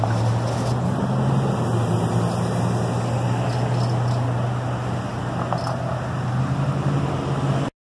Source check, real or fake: real